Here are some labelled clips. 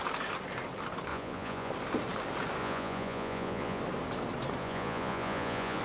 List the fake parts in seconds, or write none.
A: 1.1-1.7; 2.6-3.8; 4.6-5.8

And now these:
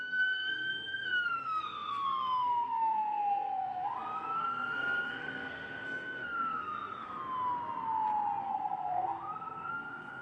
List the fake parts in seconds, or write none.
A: 0.0-7.2; 8.4-10.2

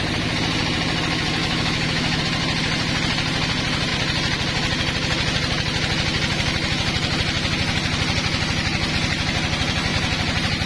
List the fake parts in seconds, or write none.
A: 1.4-2.2

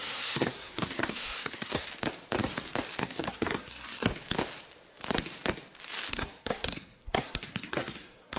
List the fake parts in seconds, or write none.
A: 0.0-1.9; 3.0-4.1; 6.1-8.4

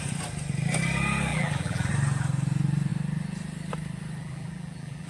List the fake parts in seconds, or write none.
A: 1.3-1.9; 4.2-5.1